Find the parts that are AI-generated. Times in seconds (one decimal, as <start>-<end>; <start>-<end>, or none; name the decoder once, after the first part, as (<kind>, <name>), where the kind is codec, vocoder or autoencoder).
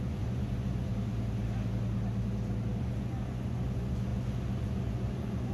0.0-0.9 (vocoder, Vocos); 2.8-5.5